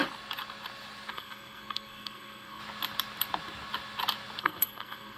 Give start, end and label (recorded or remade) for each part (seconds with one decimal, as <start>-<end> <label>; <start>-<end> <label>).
0.0-1.1 recorded; 1.1-2.6 remade; 2.6-4.4 recorded; 4.4-5.2 remade